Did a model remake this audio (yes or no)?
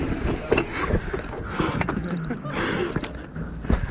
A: no